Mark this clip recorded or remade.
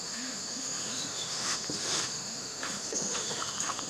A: remade